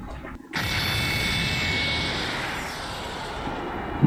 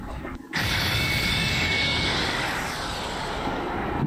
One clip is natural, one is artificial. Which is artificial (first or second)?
second